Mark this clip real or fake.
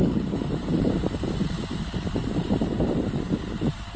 fake